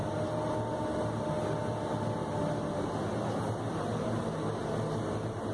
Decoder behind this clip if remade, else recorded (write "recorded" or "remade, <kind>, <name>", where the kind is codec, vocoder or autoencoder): recorded